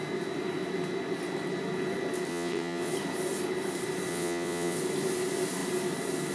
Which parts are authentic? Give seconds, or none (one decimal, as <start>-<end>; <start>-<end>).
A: 0.0-2.3; 2.9-4.1; 4.8-6.3